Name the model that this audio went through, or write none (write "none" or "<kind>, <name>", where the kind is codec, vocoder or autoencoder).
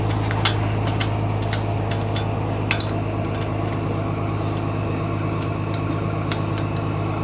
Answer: none